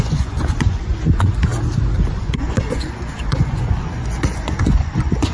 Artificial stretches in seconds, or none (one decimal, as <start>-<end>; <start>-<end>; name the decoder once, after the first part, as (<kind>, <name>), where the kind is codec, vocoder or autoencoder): 0.0-1.5 (vocoder, Vocos); 2.1-5.3